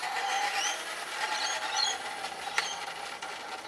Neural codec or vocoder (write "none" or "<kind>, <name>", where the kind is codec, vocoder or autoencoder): vocoder, BigVGAN v2